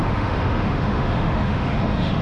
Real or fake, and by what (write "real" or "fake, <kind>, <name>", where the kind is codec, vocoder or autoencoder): fake, autoencoder, DAC-VAE